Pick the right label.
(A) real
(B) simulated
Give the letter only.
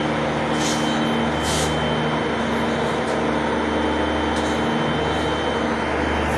A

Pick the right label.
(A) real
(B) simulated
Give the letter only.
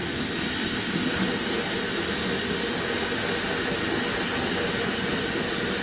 A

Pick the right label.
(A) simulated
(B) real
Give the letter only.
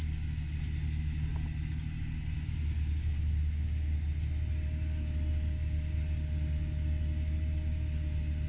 B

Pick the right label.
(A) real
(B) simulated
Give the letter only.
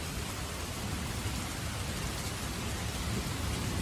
A